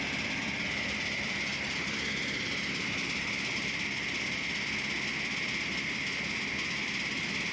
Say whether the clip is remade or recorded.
recorded